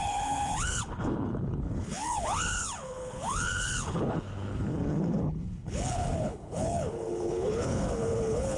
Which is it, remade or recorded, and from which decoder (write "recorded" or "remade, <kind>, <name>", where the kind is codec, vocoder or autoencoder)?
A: remade, codec, HILCodec